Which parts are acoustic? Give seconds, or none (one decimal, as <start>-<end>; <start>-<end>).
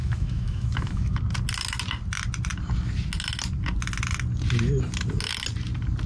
1.2-6.1